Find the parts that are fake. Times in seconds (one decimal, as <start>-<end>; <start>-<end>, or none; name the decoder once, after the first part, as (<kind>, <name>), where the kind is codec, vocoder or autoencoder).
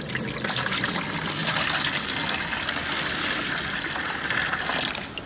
none